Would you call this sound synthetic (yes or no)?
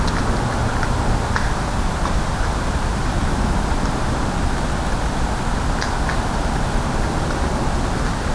no